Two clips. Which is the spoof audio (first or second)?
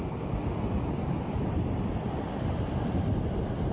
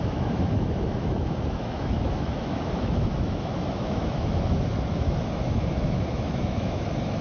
second